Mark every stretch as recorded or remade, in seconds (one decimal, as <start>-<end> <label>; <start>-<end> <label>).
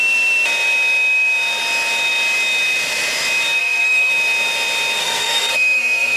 0.0-3.6 recorded; 3.6-4.1 remade; 4.1-5.0 recorded; 5.0-6.2 remade